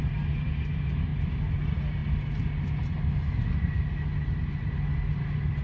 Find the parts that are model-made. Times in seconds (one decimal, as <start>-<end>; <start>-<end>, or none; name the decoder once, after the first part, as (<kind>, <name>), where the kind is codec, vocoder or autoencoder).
1.1-1.6 (vocoder, BigVGAN v2)